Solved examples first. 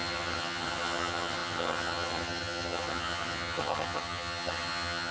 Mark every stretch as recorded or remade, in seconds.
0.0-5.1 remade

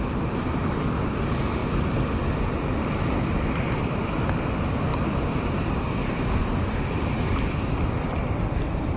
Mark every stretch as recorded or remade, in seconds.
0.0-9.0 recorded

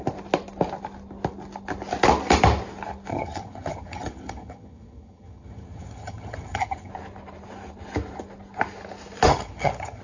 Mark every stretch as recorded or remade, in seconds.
0.0-3.1 recorded; 3.1-6.9 remade; 6.9-9.3 recorded; 9.3-10.0 remade

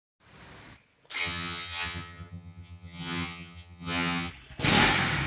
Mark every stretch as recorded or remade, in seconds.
0.0-1.2 recorded; 1.2-4.3 remade; 4.3-5.3 recorded

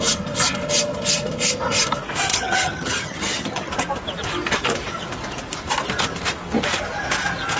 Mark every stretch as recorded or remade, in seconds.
0.0-2.3 recorded; 2.3-3.7 remade; 3.7-7.6 recorded

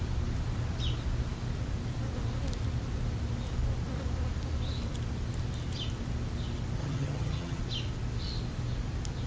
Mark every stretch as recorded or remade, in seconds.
0.0-6.8 recorded; 6.8-7.6 remade; 7.6-9.3 recorded

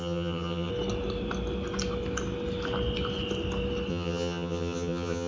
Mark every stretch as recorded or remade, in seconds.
0.0-0.7 remade; 0.7-3.9 recorded; 3.9-5.3 remade